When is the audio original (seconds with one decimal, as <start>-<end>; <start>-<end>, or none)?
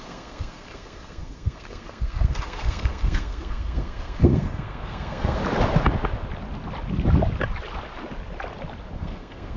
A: 5.4-9.0